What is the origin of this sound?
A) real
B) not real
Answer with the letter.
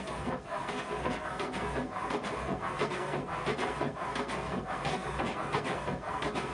B